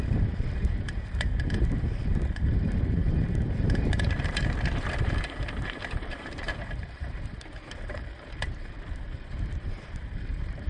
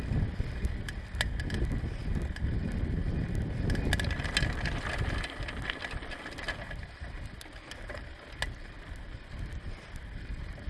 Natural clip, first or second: second